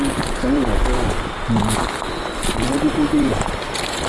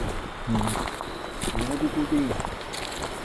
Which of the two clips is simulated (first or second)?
first